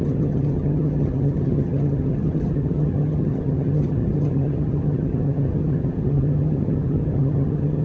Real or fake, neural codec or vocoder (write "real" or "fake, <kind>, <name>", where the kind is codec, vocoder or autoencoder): fake, vocoder, HiFi-GAN